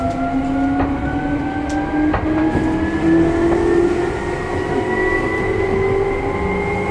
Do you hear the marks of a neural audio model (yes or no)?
no